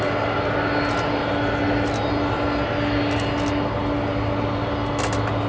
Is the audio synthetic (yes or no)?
no